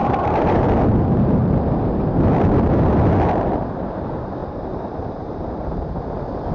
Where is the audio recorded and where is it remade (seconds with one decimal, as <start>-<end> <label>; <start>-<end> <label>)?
0.0-0.8 remade; 0.8-4.4 recorded; 4.4-6.0 remade; 6.0-6.5 recorded